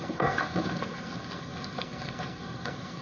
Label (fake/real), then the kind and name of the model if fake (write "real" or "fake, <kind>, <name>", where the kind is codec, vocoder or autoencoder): fake, codec, SNAC